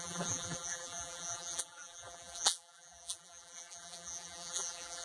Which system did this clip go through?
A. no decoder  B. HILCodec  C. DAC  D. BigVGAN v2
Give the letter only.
D